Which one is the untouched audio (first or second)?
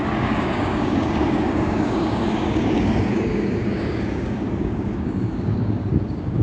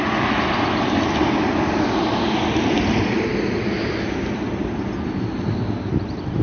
second